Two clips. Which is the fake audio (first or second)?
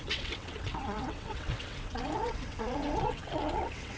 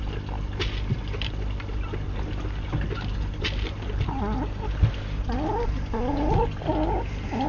first